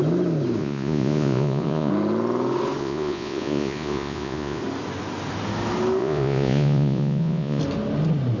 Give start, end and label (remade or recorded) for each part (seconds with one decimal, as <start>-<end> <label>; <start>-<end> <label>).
0.0-0.6 recorded; 0.6-1.9 remade; 1.9-2.8 recorded; 2.8-4.6 remade; 4.6-6.0 recorded; 6.0-7.6 remade; 7.6-8.4 recorded